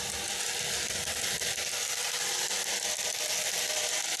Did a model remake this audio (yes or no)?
no